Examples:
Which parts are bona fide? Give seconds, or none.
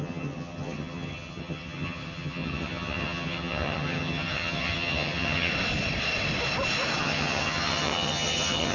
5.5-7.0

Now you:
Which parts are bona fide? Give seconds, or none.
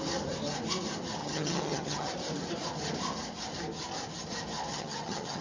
0.0-1.2; 2.1-4.7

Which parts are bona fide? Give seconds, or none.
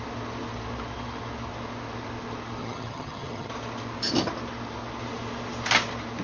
0.0-2.6; 3.5-6.2